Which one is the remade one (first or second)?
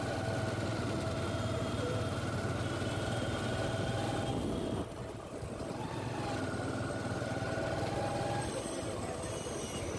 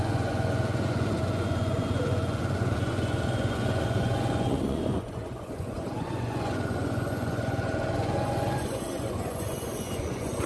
second